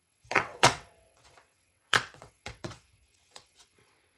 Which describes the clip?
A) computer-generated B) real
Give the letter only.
A